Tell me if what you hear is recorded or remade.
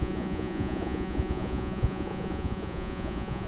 remade